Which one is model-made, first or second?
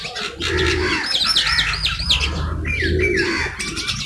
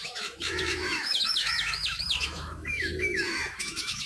second